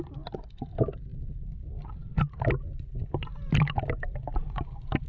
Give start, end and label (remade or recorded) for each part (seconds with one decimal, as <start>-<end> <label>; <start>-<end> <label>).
0.0-5.1 recorded